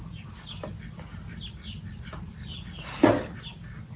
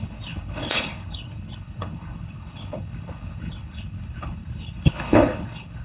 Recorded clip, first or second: first